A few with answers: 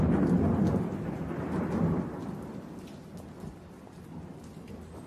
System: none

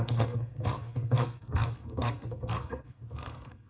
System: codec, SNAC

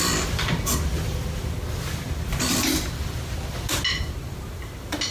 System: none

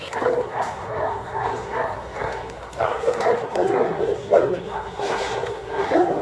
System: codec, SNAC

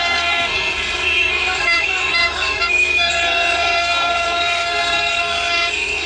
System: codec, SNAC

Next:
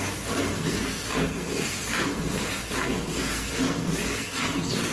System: codec, SNAC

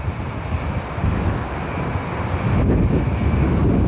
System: none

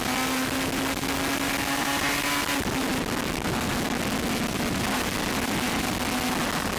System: none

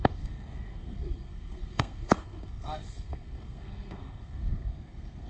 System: codec, SNAC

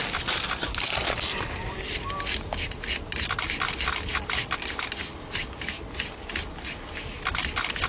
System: none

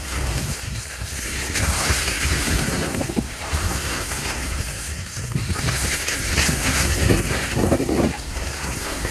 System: codec, SNAC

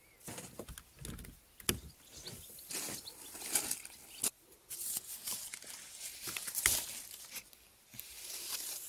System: none